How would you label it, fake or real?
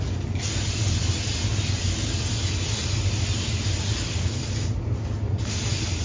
real